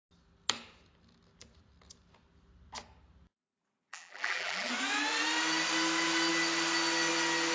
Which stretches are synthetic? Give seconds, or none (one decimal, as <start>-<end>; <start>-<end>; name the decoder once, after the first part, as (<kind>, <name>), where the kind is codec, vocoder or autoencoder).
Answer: 3.9-4.7 (vocoder, BigVGAN v2)